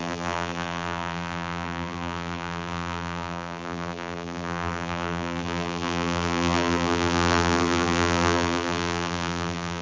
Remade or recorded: remade